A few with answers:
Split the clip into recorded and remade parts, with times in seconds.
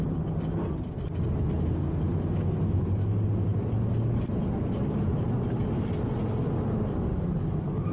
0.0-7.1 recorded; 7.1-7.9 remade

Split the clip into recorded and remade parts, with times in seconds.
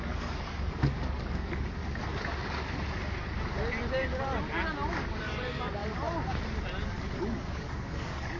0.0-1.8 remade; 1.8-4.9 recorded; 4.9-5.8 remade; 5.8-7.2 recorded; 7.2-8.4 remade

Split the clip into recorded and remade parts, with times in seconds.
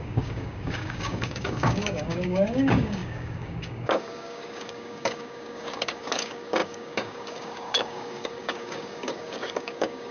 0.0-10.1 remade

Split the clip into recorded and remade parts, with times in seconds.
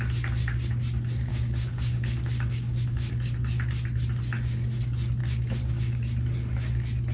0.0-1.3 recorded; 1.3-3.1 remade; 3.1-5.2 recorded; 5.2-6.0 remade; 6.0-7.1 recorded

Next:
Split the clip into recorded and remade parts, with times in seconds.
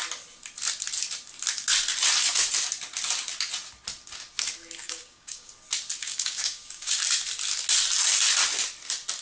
0.0-4.8 recorded; 4.8-5.5 remade; 5.5-6.0 recorded; 6.0-6.9 remade; 6.9-9.2 recorded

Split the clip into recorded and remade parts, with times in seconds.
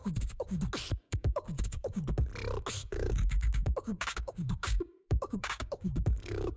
0.0-0.6 remade; 0.6-1.0 recorded; 1.0-2.0 remade; 2.0-2.8 recorded; 2.8-6.6 remade